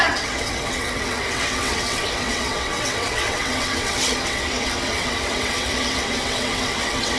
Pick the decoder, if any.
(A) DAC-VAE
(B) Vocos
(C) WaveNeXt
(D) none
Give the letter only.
C